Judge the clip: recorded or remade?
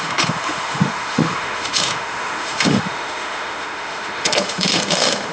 remade